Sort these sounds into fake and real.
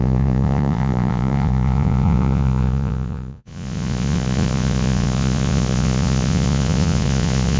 fake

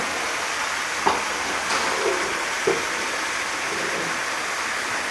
real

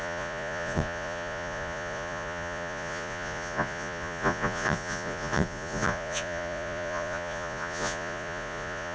fake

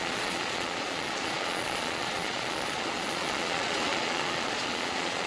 fake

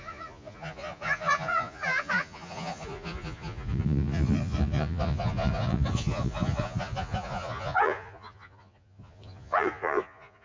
fake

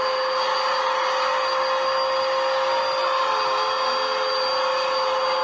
real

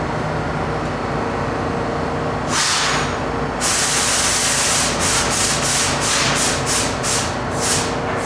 real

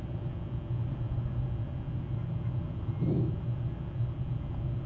real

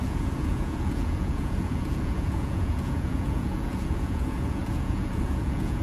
fake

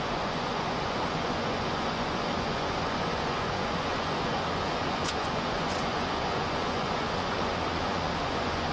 fake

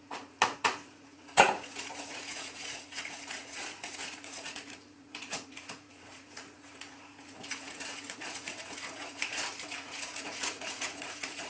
fake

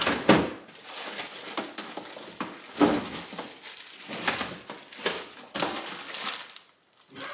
real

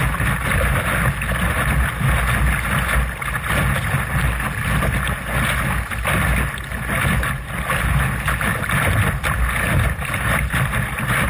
real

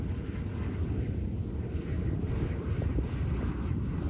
real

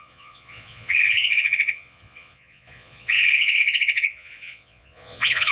fake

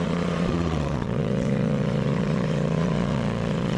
fake